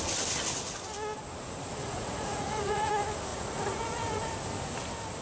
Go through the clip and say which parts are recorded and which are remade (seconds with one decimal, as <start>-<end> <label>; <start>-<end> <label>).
0.0-1.8 recorded; 1.8-2.9 remade; 2.9-3.3 recorded; 3.3-4.3 remade; 4.3-5.2 recorded